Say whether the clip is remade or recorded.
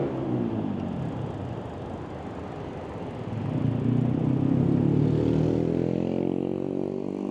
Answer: recorded